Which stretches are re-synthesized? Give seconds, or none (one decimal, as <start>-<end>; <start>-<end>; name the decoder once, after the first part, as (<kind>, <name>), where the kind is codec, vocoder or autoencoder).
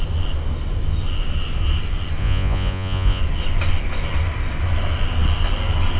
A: 2.2-3.2 (vocoder, Vocos)